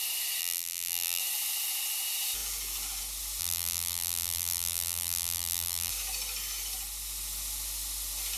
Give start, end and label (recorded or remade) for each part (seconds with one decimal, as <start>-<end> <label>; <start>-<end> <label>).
0.0-0.4 recorded; 0.4-1.2 remade; 1.2-3.4 recorded; 3.4-5.9 remade; 5.9-8.4 recorded